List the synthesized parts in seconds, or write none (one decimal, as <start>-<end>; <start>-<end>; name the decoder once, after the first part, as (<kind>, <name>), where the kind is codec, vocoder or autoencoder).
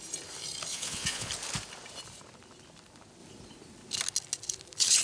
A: 0.7-1.3 (vocoder, Vocos)